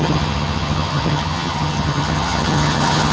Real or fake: fake